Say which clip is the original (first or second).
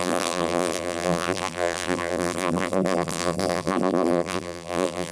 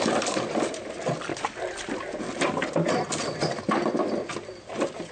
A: second